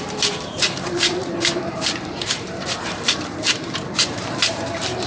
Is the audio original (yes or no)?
no